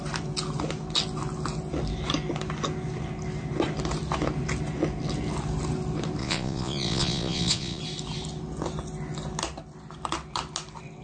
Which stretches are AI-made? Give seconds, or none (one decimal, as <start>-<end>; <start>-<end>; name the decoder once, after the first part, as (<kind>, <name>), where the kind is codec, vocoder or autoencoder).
6.2-7.8 (vocoder, Vocos)